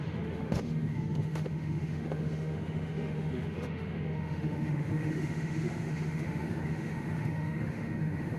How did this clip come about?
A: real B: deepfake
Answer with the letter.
B